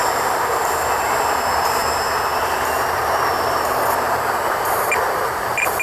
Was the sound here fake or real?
fake